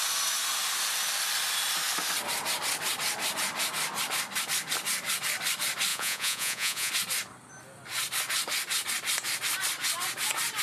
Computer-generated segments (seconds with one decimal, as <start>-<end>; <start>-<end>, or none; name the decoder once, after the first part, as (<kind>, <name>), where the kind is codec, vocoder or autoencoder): 5.9-6.9 (vocoder, Vocos)